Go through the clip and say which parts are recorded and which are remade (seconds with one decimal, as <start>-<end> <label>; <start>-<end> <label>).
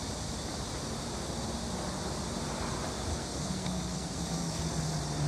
0.0-3.1 recorded; 3.1-4.6 remade; 4.6-5.3 recorded